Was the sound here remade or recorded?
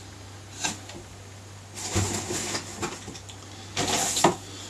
recorded